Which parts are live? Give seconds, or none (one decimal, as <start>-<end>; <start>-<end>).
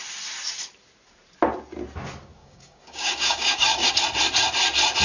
0.0-2.4; 3.9-5.0